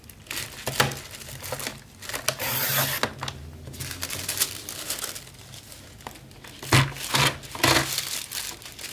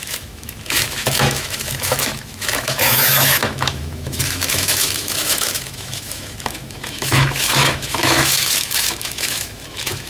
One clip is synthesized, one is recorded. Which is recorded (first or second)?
first